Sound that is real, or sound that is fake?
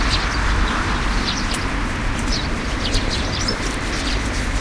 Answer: fake